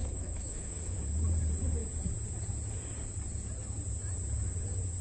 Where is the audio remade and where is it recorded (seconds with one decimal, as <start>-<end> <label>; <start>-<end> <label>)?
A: 0.0-1.0 remade; 1.0-5.0 recorded